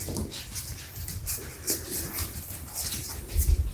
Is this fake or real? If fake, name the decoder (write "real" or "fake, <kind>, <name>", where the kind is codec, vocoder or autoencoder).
real